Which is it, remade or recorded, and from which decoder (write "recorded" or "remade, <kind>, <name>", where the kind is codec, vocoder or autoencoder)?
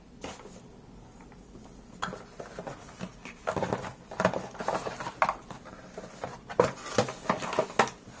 recorded